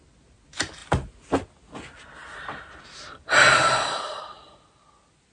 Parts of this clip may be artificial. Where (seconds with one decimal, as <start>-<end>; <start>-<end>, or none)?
none